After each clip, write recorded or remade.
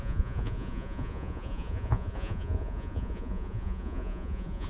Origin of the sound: remade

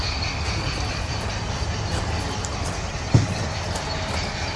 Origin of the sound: recorded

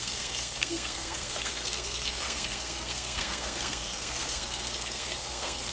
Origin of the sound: remade